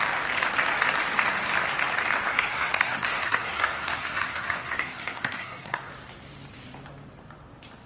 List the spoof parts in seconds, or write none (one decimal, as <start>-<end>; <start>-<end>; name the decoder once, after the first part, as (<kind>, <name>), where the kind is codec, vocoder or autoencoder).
2.3-5.9 (codec, SNAC)